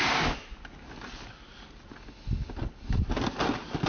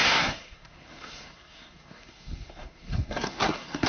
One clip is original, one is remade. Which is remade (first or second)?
second